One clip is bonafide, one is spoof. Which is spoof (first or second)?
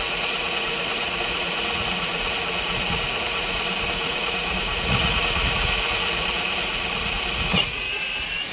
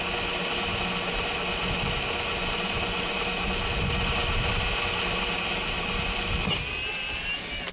first